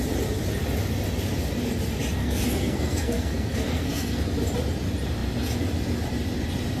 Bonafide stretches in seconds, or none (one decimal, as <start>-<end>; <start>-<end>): 0.0-2.2; 4.2-6.8